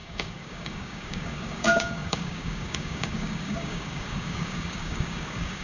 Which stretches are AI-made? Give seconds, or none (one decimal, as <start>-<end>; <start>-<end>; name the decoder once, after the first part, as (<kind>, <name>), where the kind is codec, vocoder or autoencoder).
0.0-5.6 (codec, DAC)